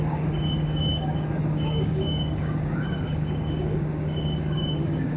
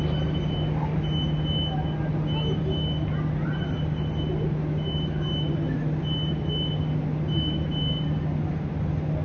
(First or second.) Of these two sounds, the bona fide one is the second